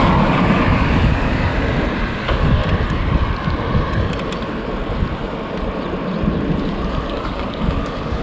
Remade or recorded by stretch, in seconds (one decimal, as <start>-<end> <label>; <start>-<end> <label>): 0.0-1.5 remade; 1.5-2.2 recorded; 2.2-2.6 remade; 2.6-7.1 recorded; 7.1-8.2 remade